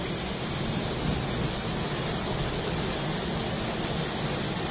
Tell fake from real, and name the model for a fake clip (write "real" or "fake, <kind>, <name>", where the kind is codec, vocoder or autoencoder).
real